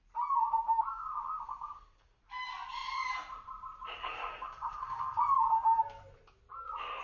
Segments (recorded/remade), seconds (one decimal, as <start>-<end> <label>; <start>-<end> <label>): 0.0-0.9 recorded; 0.9-2.2 remade; 2.2-4.0 recorded; 4.0-5.2 remade; 5.2-7.0 recorded